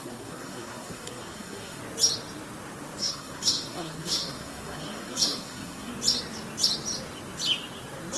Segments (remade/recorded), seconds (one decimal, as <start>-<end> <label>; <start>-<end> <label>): 0.0-1.8 remade; 1.8-3.0 recorded; 3.0-5.9 remade; 5.9-8.2 recorded